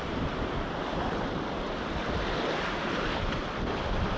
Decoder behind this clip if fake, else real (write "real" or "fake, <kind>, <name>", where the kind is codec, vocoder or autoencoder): real